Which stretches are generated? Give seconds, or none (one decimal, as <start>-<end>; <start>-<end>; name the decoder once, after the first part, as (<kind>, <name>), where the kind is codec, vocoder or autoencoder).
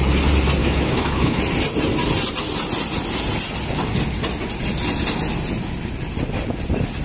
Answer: 0.6-1.4 (autoencoder, DAC-VAE)